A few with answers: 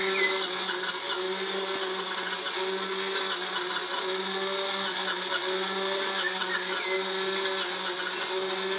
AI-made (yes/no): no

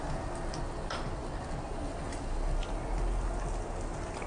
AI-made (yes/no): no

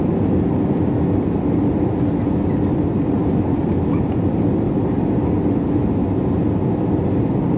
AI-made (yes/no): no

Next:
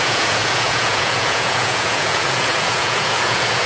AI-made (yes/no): yes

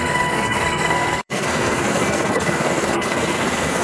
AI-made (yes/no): yes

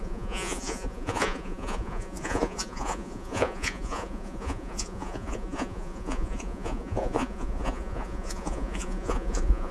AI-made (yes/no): yes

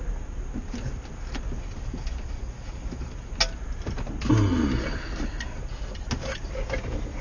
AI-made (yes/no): no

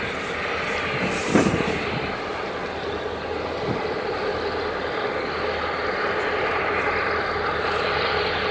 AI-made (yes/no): no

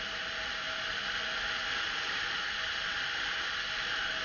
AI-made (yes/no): no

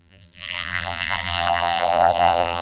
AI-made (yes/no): yes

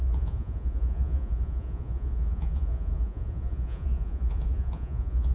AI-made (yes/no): yes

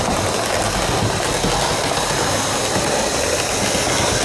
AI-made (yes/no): no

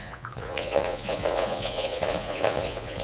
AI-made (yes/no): yes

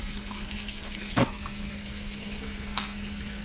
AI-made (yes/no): yes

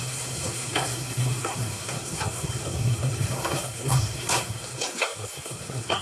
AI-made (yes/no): yes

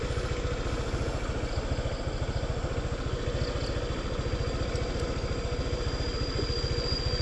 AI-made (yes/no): no